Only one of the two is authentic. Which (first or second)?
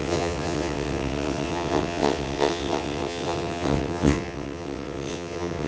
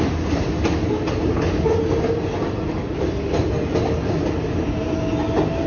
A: second